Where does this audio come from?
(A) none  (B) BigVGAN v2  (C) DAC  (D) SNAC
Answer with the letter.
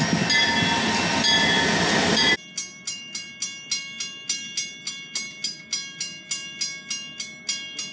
A